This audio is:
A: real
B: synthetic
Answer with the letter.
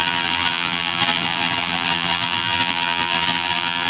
B